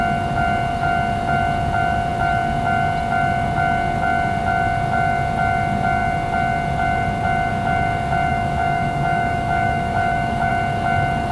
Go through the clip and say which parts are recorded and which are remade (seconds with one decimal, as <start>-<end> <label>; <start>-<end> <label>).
0.0-8.3 recorded; 8.3-10.5 remade; 10.5-11.3 recorded